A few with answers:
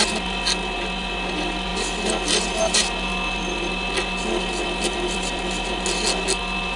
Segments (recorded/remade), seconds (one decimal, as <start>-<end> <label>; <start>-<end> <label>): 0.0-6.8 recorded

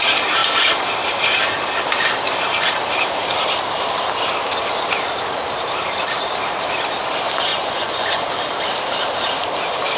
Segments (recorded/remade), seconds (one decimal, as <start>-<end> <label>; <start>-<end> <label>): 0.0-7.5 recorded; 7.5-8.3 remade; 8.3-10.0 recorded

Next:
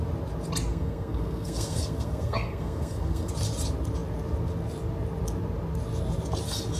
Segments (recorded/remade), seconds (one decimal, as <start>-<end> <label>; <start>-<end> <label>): 0.0-0.7 recorded; 0.7-3.3 remade; 3.3-6.8 recorded